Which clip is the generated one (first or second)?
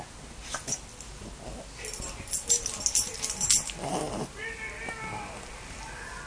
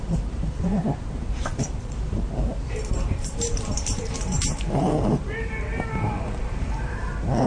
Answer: second